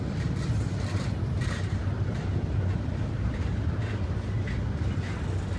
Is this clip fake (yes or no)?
no